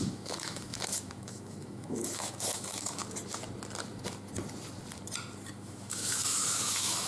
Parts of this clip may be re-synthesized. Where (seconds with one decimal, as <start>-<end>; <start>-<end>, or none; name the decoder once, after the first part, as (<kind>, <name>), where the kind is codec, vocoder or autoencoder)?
0.0-3.0 (autoencoder, DAC-VAE); 5.5-7.1